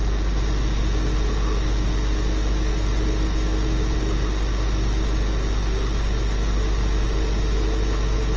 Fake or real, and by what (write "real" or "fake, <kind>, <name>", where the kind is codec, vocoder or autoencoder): real